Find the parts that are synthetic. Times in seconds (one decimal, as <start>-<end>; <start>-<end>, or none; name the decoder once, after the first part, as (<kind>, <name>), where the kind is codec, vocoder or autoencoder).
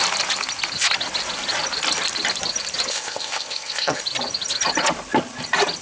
2.9-4.0 (codec, ZipCodec)